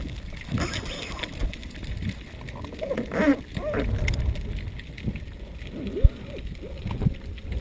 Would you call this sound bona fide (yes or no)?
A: yes